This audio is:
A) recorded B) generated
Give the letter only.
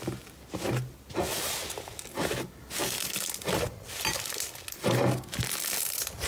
A